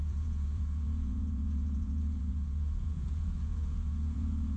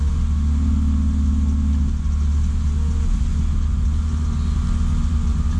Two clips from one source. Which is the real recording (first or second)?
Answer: second